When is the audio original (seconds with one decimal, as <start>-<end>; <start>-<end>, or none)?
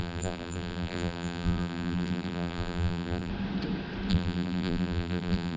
3.3-4.1